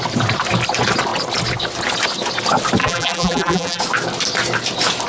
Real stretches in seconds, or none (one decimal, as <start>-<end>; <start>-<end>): 0.0-2.8; 3.8-5.1